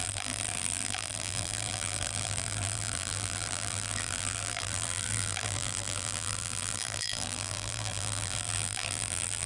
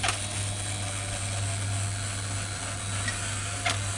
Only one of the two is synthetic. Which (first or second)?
first